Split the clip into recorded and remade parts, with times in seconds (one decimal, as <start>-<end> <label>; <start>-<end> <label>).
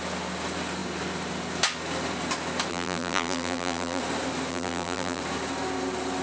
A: 0.0-2.7 recorded; 2.7-4.0 remade; 4.0-4.5 recorded; 4.5-5.2 remade; 5.2-6.2 recorded